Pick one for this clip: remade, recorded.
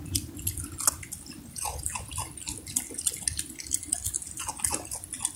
recorded